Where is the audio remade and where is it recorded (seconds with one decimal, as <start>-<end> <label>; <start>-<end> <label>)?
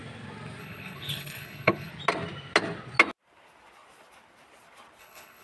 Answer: 0.0-0.6 recorded; 0.6-1.9 remade; 1.9-5.0 recorded; 5.0-5.4 remade